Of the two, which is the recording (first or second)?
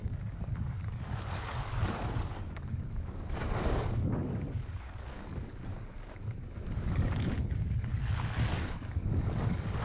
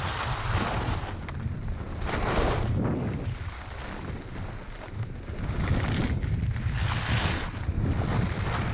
second